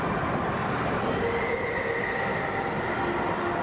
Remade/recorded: recorded